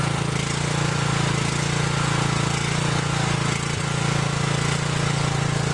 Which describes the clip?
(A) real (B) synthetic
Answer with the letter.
A